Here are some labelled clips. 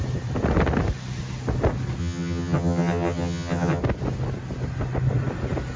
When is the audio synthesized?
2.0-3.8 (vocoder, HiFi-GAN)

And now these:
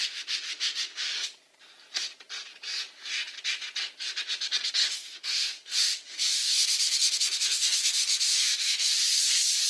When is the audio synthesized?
0.0-1.0 (autoencoder, DAC-VAE); 4.8-8.9

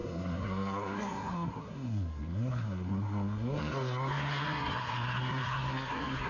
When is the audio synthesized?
0.0-6.3 (codec, SNAC)

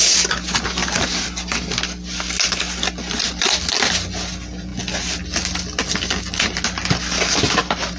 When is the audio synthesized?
none